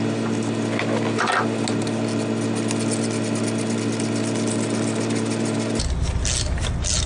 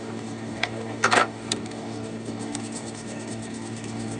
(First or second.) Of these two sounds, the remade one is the second